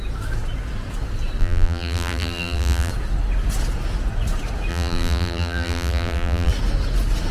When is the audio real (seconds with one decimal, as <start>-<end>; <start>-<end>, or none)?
0.0-1.4; 2.9-4.7; 6.5-7.3